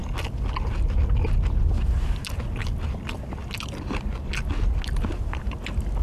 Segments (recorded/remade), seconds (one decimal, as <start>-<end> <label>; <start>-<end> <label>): 0.0-6.0 recorded